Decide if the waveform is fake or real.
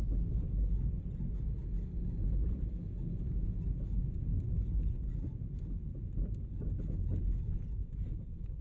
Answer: real